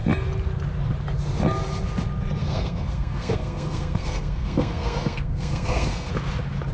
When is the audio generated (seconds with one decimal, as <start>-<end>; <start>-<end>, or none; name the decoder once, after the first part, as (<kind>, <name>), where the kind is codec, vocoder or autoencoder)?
2.4-6.1 (codec, SNAC)

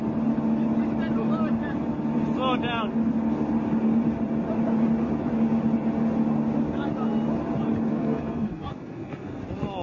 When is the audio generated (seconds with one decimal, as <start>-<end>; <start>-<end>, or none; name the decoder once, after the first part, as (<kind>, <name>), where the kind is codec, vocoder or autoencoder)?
7.9-9.4 (codec, SNAC)

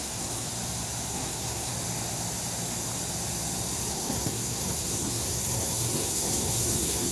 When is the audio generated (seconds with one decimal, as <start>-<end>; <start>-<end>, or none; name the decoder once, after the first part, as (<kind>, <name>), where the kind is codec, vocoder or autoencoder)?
0.0-0.5 (codec, SNAC); 1.1-1.7; 3.9-7.1

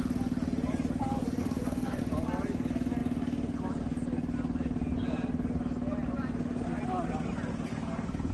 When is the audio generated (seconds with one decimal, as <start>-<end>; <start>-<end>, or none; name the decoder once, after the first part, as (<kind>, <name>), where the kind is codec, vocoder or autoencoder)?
1.4-2.0 (codec, SNAC); 7.7-8.3

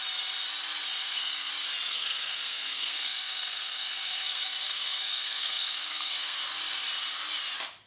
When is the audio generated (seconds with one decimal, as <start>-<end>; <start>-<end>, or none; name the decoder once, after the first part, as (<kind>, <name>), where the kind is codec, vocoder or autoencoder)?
1.0-1.5 (codec, SNAC); 1.9-6.4

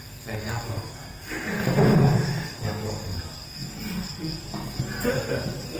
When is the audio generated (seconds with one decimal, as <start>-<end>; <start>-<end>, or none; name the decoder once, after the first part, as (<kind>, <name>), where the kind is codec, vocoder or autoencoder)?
0.0-5.8 (codec, SNAC)